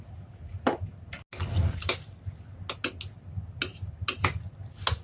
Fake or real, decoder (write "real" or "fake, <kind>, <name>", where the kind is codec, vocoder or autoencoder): real